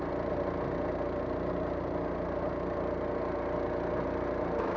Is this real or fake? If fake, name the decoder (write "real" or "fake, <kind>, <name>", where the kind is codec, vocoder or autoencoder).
real